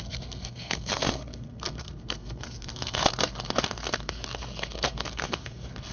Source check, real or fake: fake